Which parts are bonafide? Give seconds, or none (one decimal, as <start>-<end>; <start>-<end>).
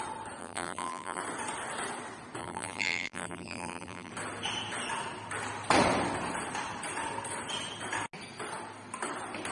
0.0-0.4; 1.2-2.4; 4.1-9.5